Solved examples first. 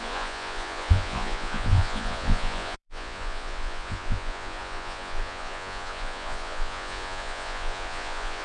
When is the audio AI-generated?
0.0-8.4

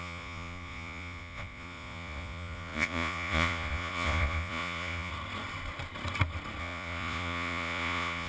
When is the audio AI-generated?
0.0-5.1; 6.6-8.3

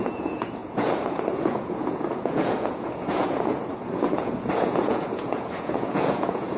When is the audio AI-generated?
0.0-6.6

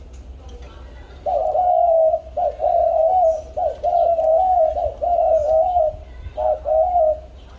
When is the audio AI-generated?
none

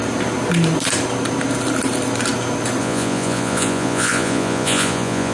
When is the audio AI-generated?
2.8-5.3

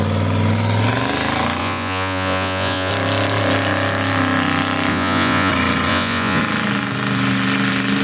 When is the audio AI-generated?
1.6-2.9; 4.9-5.5; 5.9-6.4

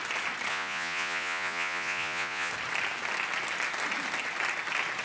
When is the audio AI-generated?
0.5-2.5

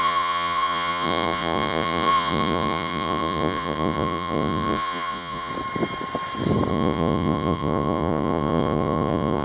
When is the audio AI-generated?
0.0-5.5; 6.7-9.4